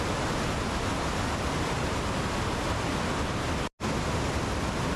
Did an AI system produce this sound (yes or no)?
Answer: no